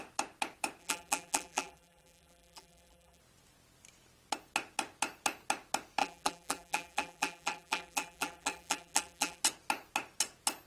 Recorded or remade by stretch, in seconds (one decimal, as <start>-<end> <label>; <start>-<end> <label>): 0.0-0.8 recorded; 0.8-3.2 remade; 3.2-6.0 recorded; 6.0-9.4 remade; 9.4-10.7 recorded